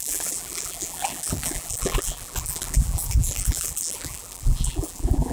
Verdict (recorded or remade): remade